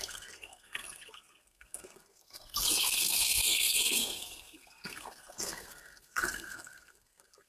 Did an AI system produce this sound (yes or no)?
yes